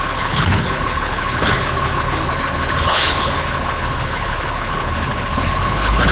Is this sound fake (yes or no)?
yes